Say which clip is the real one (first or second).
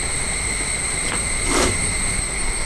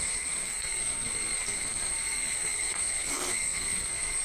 first